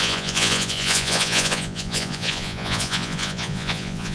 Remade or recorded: remade